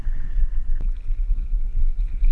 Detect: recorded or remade recorded